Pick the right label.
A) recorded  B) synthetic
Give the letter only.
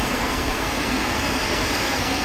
B